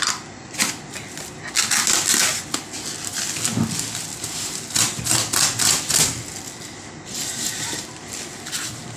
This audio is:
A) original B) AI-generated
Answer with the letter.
A